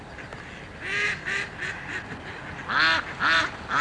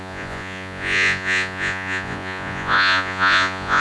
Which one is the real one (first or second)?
first